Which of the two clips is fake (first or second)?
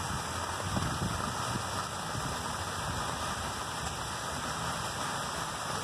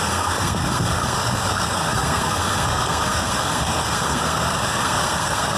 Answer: second